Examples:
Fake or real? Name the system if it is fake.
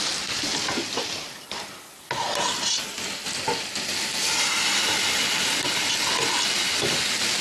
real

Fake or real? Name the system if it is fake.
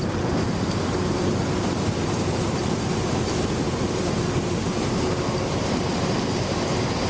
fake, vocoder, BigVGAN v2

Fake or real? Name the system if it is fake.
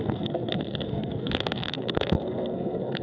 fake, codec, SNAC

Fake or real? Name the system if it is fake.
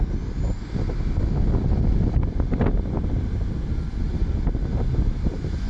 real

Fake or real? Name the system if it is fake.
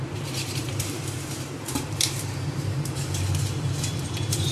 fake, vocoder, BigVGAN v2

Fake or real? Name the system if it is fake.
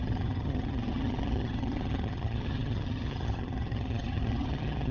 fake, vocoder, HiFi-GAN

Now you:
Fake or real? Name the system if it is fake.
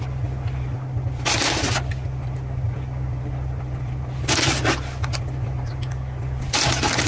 real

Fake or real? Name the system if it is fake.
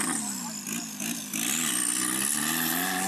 real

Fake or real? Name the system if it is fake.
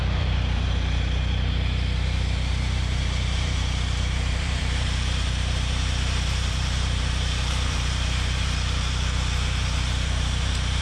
fake, vocoder, BigVGAN v2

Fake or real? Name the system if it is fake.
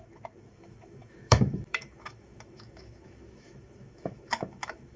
fake, autoencoder, DAC-VAE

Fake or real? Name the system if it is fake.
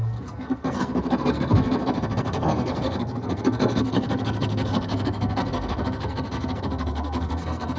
fake, codec, SNAC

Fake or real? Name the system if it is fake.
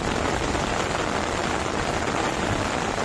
fake, vocoder, BigVGAN v2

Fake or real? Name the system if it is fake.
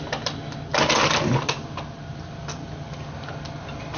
real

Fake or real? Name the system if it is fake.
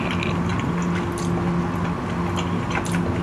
real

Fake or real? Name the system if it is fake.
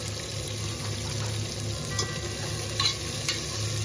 real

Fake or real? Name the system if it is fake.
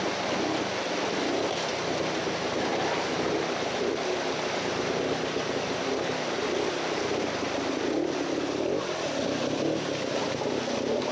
real